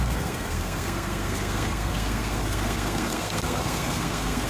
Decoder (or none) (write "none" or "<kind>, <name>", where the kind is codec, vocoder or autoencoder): codec, SNAC